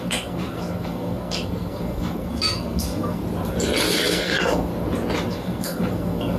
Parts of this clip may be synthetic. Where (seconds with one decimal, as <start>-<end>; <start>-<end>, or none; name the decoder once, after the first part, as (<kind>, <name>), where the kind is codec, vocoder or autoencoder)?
0.0-3.2 (codec, SNAC); 3.9-4.7; 5.3-6.4